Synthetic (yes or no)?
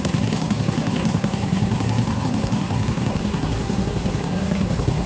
yes